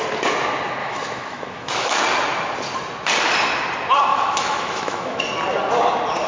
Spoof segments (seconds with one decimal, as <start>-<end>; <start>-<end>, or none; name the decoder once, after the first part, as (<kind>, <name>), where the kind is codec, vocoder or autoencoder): 0.8-2.0 (autoencoder, DAC-VAE); 4.1-5.2

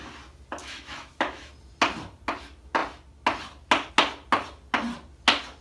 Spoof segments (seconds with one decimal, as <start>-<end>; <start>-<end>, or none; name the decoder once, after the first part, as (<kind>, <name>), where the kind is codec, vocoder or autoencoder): 0.6-1.5 (autoencoder, DAC-VAE)

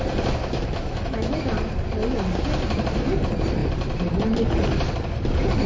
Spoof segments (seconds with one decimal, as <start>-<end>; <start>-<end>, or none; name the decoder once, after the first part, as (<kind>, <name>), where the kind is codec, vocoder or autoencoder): 0.4-1.4 (autoencoder, DAC-VAE)

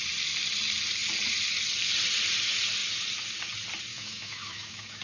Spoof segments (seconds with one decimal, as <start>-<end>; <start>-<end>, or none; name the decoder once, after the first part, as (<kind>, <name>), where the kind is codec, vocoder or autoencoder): 3.9-5.0 (autoencoder, DAC-VAE)

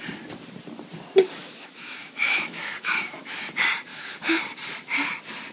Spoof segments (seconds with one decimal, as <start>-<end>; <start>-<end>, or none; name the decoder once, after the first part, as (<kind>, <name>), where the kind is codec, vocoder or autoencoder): 1.4-3.5 (autoencoder, DAC-VAE); 3.9-4.4

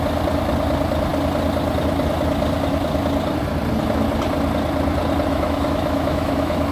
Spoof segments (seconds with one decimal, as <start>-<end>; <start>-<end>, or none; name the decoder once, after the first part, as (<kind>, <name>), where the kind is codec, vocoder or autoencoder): 5.3-6.7 (autoencoder, DAC-VAE)

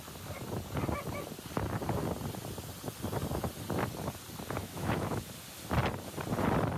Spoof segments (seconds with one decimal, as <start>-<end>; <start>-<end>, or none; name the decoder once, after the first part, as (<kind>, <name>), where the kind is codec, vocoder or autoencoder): 4.6-5.2 (autoencoder, DAC-VAE)

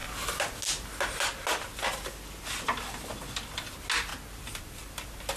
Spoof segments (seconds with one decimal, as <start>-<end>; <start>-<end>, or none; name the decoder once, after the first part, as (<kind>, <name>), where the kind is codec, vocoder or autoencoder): none